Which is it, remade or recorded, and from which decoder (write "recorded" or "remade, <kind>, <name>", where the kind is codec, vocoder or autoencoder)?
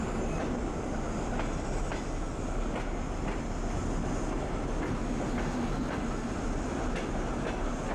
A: recorded